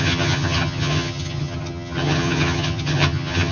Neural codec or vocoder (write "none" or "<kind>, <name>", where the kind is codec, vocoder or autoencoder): vocoder, HiFi-GAN